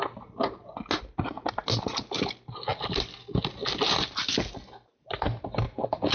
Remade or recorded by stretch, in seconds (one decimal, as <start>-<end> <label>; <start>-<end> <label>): 0.0-6.1 recorded